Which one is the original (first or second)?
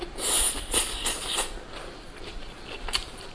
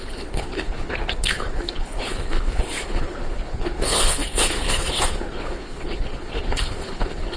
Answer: first